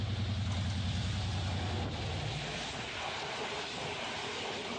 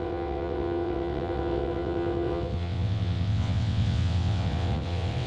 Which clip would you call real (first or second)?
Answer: first